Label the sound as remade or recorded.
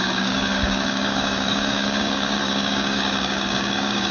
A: remade